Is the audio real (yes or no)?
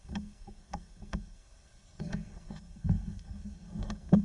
no